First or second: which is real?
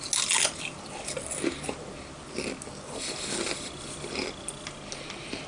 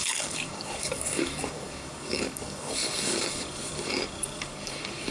first